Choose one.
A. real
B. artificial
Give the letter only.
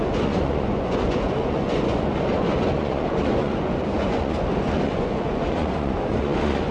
B